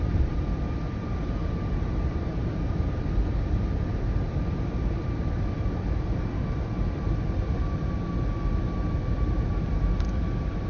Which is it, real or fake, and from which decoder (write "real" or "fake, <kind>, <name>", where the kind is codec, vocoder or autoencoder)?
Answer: real